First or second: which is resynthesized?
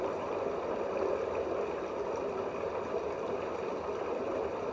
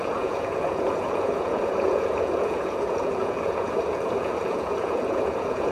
second